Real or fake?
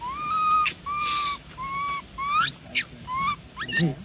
real